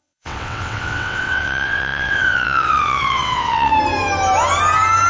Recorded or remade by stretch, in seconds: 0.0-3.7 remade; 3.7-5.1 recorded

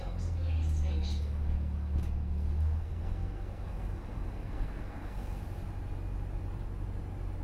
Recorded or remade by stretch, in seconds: 0.0-5.4 remade; 5.4-7.4 recorded

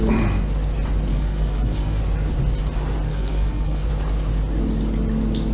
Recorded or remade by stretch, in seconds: 0.0-1.1 recorded; 1.1-2.0 remade; 2.0-3.1 recorded; 3.1-3.9 remade; 3.9-5.5 recorded

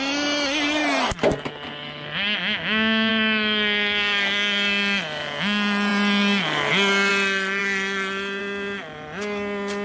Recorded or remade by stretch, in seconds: 0.0-2.4 recorded; 2.4-3.1 remade; 3.1-9.8 recorded

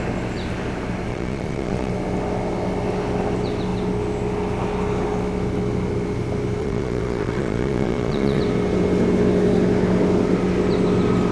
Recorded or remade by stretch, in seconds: 0.0-1.1 recorded; 1.1-1.9 remade; 1.9-6.6 recorded; 6.6-8.4 remade; 8.4-11.3 recorded

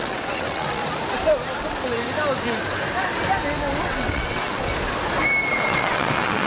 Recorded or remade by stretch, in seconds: 0.0-0.8 remade; 0.8-3.8 recorded; 3.8-4.7 remade; 4.7-5.5 recorded; 5.5-6.5 remade